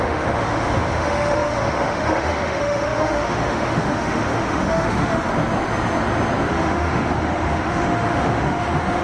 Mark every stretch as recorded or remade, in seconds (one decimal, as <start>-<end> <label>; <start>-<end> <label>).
0.0-5.3 remade; 5.3-6.5 recorded; 6.5-9.0 remade